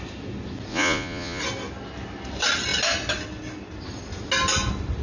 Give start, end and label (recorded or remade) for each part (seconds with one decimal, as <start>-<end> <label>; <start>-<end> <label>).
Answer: 0.0-0.7 recorded; 0.7-1.4 remade; 1.4-5.0 recorded

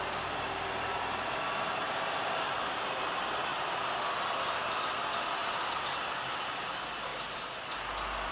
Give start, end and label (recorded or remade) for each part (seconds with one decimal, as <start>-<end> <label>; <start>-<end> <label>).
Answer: 0.0-8.3 recorded

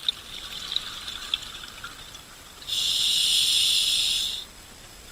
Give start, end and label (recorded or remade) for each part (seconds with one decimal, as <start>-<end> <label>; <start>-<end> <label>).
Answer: 0.0-5.1 recorded